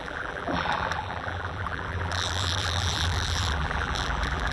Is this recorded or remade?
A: remade